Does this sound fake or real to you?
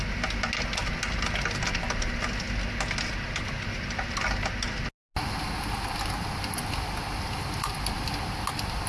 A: real